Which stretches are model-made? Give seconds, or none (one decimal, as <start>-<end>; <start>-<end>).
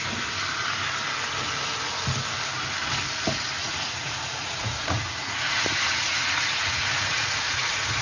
3.6-8.0